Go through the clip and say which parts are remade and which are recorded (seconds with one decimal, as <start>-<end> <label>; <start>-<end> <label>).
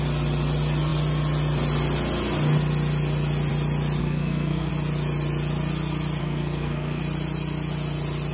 0.0-4.0 recorded; 4.0-4.7 remade; 4.7-6.2 recorded; 6.2-7.0 remade; 7.0-8.3 recorded